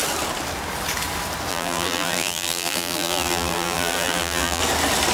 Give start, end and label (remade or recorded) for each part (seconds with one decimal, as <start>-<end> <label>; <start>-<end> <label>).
0.0-1.5 recorded; 1.5-4.6 remade; 4.6-5.1 recorded